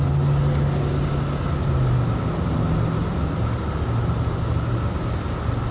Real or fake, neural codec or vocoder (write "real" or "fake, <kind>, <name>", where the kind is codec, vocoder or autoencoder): real